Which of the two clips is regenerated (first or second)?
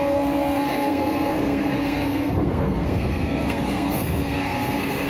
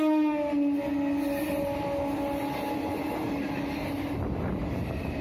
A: first